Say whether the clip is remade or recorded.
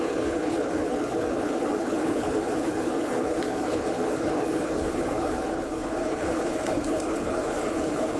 remade